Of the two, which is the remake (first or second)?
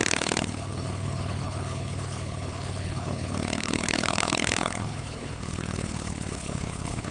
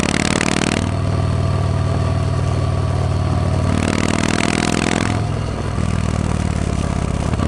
first